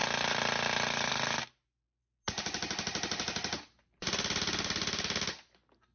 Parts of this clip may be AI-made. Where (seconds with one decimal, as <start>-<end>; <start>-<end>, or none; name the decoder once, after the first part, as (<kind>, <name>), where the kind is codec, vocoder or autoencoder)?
none